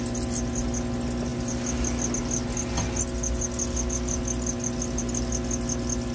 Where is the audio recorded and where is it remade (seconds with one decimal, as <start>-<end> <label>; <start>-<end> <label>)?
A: 0.0-6.1 recorded